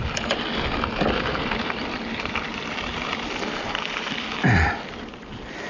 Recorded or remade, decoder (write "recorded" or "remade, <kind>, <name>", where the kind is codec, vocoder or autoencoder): recorded